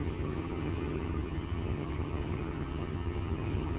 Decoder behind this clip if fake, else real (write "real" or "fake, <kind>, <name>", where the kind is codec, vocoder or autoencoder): fake, vocoder, HiFi-GAN